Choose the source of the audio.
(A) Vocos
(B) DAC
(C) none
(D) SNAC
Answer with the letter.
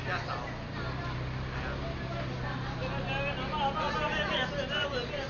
C